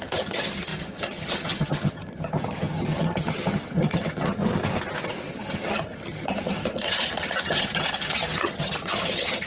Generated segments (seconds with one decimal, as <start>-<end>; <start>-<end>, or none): 0.0-4.4; 5.3-9.5